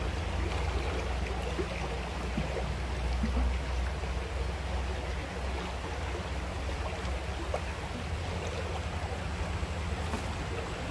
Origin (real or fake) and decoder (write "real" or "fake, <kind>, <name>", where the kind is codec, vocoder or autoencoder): real